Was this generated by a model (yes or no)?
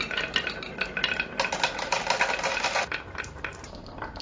no